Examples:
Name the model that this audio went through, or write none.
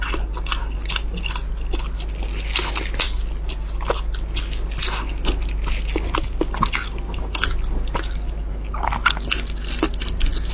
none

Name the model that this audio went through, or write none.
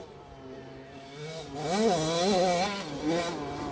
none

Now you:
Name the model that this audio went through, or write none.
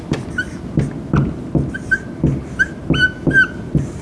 none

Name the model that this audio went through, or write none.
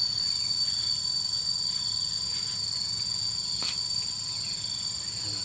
none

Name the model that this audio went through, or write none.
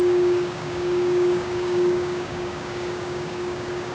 codec, DAC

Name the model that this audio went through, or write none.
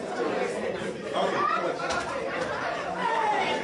vocoder, BigVGAN v2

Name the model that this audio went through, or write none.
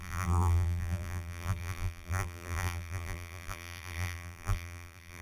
vocoder, BigVGAN v2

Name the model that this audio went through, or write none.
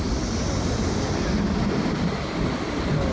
none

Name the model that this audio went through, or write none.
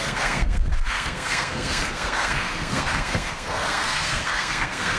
codec, SNAC